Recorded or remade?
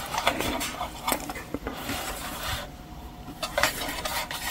remade